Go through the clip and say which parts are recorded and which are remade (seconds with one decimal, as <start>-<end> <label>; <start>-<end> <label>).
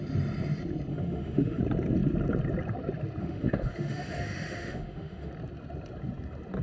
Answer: 0.0-0.9 recorded; 0.9-1.6 remade; 1.6-3.2 recorded; 3.2-5.3 remade; 5.3-6.6 recorded